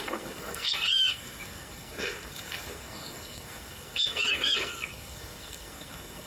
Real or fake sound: fake